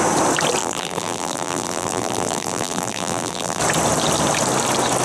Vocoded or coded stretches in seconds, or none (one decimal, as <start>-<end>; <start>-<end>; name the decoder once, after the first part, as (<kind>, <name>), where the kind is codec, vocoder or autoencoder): 0.6-3.6 (vocoder, BigVGAN v2)

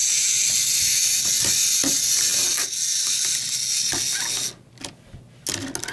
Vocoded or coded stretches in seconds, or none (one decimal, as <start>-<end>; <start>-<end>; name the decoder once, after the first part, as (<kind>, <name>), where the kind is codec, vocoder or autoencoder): none

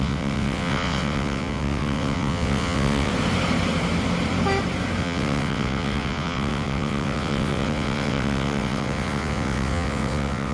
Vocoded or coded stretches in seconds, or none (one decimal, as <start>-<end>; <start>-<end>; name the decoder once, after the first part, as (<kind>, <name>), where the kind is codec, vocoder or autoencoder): 0.0-3.1 (vocoder, WaveNeXt); 5.0-10.5

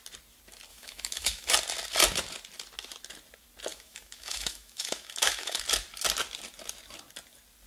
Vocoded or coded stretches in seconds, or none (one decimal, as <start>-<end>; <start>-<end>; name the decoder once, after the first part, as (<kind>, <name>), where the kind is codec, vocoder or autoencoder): 0.7-1.5 (autoencoder, DAC-VAE); 3.7-5.6

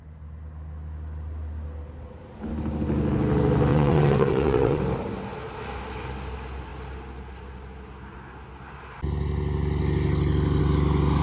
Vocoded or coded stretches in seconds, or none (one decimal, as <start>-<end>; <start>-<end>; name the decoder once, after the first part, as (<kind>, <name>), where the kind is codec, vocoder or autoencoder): 3.7-4.8 (vocoder, WaveNeXt)

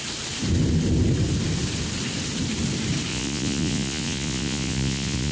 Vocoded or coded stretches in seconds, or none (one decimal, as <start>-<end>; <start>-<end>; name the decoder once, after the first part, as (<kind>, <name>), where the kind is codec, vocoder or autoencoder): 3.1-5.3 (vocoder, Vocos)

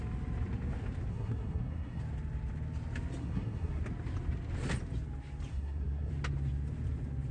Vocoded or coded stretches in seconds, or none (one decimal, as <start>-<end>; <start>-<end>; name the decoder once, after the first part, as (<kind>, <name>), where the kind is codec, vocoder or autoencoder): 1.1-2.0 (codec, SNAC); 3.2-3.8; 5.5-6.1